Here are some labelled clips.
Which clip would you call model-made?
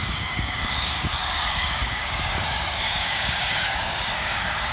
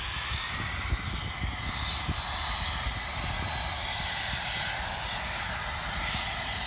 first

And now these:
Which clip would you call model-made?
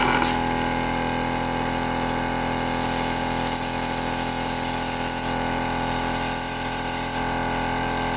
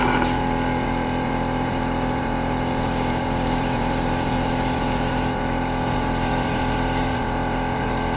second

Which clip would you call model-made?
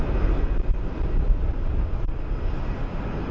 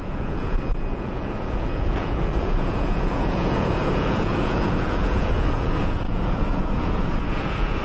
second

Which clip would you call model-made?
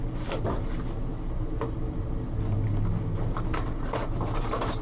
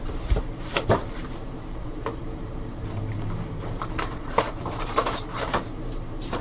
second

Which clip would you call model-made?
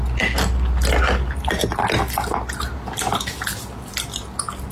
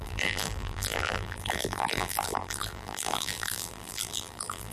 second